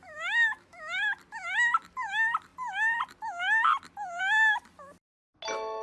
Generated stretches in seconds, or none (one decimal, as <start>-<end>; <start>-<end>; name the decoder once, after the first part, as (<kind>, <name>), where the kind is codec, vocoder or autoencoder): 0.0-1.0 (autoencoder, DAC-VAE)